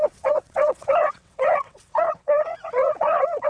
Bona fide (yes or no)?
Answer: no